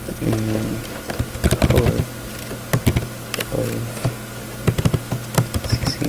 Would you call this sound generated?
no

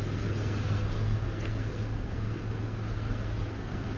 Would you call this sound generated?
yes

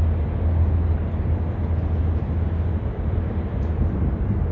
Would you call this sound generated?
no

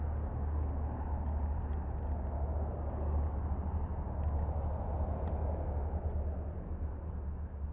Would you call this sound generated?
no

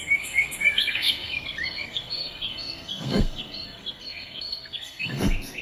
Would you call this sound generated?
yes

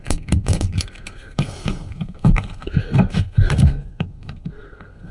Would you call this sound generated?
yes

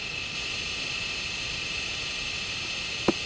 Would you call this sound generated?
no